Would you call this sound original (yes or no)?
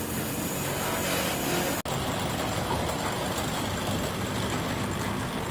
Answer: yes